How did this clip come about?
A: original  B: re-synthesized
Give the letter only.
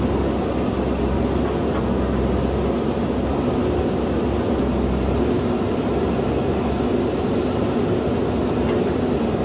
A